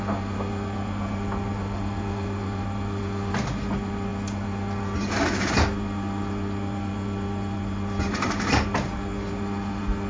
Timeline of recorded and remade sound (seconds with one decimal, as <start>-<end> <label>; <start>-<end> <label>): 0.0-10.1 recorded

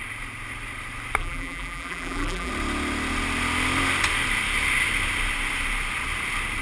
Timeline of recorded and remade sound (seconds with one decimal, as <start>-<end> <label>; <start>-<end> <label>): 0.0-1.2 recorded; 1.2-2.5 remade; 2.5-6.6 recorded

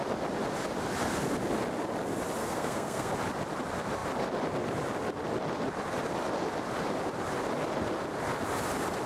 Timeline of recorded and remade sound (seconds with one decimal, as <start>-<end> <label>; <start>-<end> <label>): 0.0-2.4 recorded; 2.4-3.1 remade; 3.1-9.1 recorded

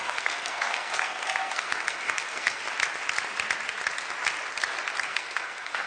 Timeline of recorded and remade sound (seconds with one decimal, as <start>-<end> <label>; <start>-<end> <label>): 0.0-2.6 remade; 2.6-5.0 recorded; 5.0-5.9 remade

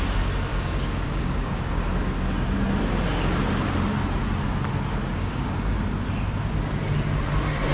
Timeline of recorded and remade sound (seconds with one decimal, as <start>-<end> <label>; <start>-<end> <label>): 0.0-0.5 recorded; 0.5-1.6 remade; 1.6-5.1 recorded; 5.1-5.7 remade; 5.7-7.7 recorded